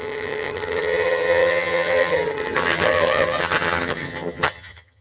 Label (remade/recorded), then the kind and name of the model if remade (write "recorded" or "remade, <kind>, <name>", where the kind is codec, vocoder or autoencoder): remade, vocoder, HiFi-GAN